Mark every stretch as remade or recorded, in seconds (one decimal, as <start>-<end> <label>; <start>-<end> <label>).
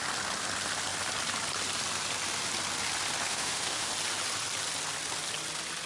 0.0-3.3 recorded; 3.3-3.9 remade; 3.9-5.9 recorded